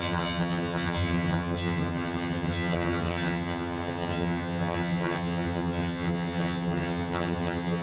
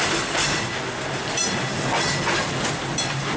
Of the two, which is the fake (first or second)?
first